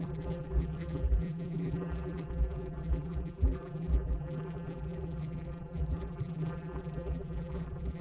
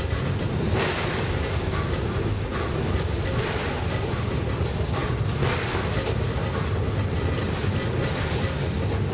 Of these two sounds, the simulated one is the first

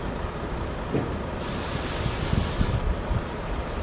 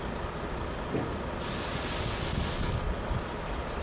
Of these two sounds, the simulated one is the first